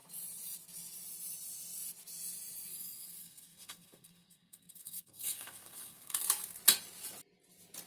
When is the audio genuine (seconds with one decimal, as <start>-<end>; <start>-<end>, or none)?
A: 0.0-2.7; 6.2-7.9